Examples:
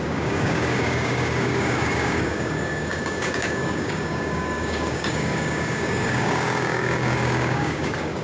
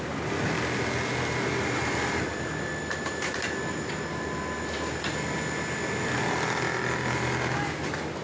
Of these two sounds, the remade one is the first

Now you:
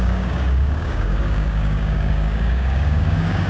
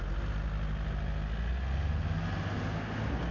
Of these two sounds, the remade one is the first